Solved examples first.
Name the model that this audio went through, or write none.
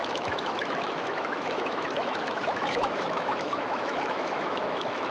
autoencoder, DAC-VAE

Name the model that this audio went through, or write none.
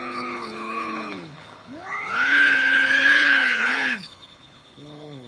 codec, HILCodec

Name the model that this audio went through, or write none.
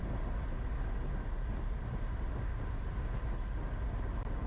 none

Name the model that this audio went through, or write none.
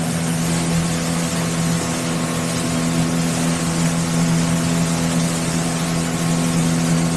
none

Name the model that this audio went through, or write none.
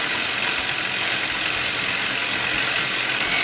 none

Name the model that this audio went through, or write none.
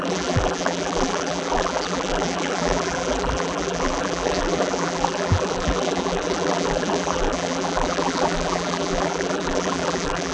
vocoder, BigVGAN v2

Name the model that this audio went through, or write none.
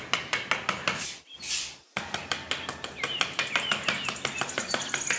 none